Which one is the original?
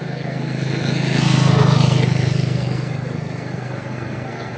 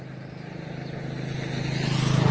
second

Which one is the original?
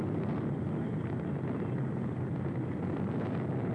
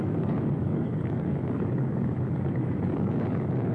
first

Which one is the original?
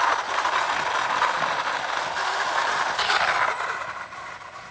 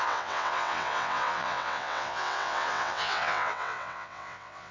first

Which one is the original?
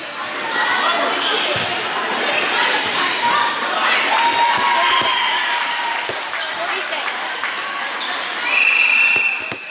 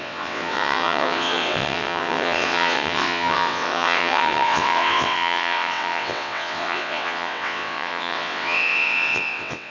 first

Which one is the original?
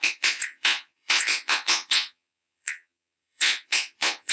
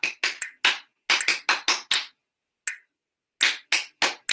second